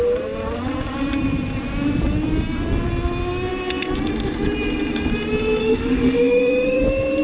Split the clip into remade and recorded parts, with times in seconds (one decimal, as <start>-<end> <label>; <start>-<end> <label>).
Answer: 0.0-5.6 recorded; 5.6-6.8 remade; 6.8-7.2 recorded